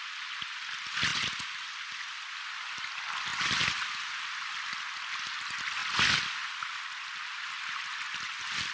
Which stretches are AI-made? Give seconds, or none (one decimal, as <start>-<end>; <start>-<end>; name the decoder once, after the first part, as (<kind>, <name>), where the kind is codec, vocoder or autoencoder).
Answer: none

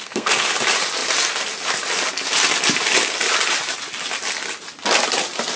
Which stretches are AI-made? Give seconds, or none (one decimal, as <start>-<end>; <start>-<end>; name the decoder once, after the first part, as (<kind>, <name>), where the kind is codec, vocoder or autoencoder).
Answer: 0.0-0.5 (codec, SNAC)

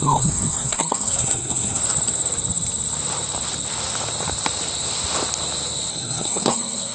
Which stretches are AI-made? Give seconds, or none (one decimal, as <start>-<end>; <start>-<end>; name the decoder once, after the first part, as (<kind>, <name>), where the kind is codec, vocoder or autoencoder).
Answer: 0.0-1.8 (codec, SNAC); 5.9-6.9

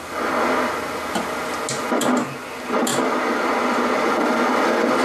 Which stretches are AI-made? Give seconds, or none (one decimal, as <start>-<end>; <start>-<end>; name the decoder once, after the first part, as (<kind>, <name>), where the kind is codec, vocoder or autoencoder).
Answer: none